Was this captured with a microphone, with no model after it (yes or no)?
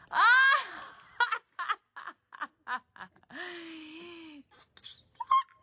yes